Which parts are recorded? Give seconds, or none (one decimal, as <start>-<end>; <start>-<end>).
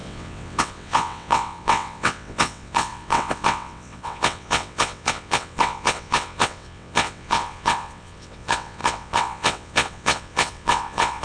none